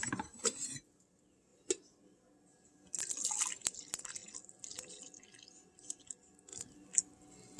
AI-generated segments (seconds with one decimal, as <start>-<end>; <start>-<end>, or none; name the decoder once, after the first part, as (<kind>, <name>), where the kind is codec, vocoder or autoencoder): none

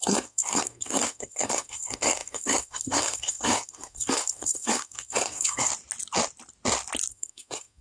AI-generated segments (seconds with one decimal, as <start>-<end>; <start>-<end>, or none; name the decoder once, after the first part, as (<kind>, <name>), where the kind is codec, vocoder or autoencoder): 0.0-5.7 (codec, SNAC); 7.1-7.8